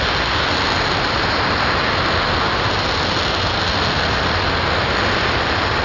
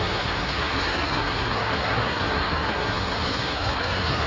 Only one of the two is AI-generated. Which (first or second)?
second